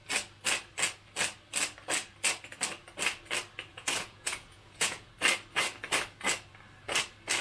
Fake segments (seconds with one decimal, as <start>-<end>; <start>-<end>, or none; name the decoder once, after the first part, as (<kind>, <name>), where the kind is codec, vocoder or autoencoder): 3.7-5.1 (vocoder, Vocos)